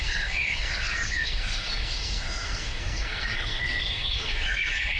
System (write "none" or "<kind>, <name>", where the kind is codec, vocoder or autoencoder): codec, SNAC